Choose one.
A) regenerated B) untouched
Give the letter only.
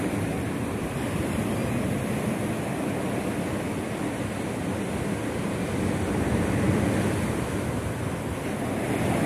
B